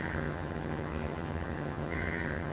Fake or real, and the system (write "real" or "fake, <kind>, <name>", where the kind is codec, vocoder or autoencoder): fake, vocoder, HiFi-GAN